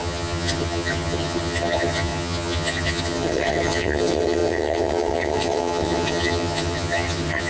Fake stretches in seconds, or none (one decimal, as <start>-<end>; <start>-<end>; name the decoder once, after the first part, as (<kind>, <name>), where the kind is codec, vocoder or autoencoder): 0.0-7.5 (vocoder, HiFi-GAN)